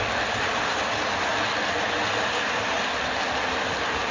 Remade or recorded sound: recorded